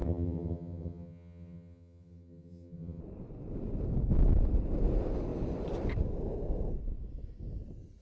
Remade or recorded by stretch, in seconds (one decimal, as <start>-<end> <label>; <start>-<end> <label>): 0.0-3.0 remade; 3.0-8.0 recorded